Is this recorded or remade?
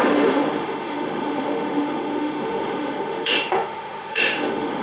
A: remade